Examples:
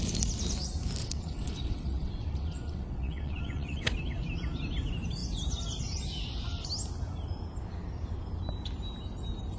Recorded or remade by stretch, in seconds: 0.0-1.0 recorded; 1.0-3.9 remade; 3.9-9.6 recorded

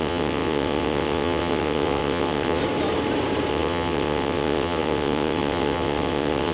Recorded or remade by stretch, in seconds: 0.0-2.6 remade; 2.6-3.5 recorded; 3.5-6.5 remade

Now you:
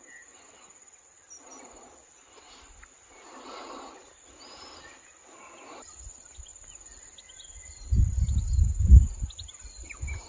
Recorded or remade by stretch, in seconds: 0.0-10.3 recorded